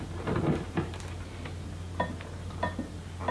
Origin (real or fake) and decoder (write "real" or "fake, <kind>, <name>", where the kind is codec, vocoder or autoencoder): real